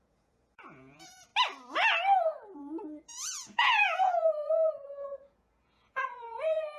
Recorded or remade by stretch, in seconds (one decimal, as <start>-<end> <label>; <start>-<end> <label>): 0.0-1.3 remade; 1.3-2.2 recorded; 2.2-6.8 remade